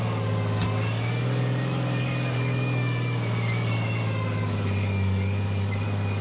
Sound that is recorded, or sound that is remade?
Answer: remade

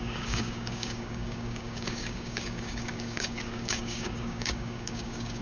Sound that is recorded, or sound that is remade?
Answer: remade